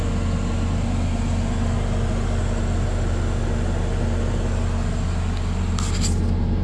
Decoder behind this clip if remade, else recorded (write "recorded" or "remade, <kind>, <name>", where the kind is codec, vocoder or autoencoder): recorded